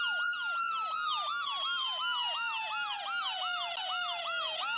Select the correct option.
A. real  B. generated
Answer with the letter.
A